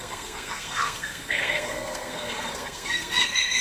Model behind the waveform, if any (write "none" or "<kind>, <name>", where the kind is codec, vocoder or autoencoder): codec, SNAC